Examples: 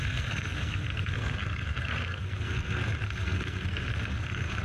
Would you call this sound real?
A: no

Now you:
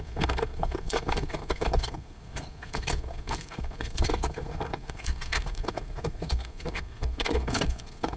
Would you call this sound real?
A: no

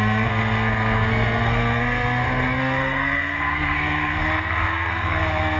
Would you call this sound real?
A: no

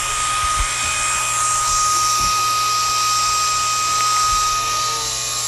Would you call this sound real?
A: yes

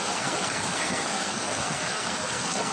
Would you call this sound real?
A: no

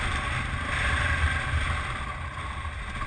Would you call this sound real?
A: yes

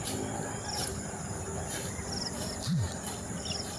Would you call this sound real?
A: yes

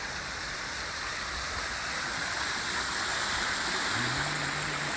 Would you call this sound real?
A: yes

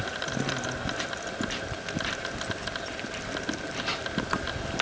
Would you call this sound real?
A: yes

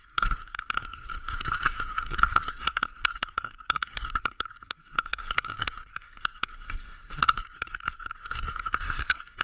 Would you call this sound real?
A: no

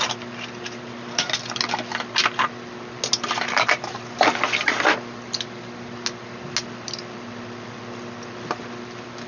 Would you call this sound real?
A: yes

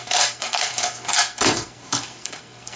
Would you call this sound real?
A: no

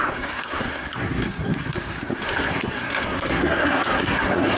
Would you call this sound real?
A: no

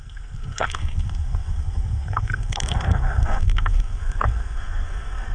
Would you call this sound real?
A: no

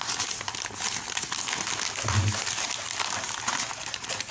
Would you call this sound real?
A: yes